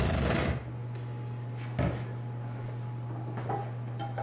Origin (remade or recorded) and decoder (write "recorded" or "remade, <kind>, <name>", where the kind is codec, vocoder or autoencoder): recorded